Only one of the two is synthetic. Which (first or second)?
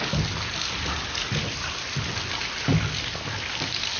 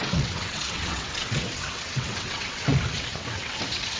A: second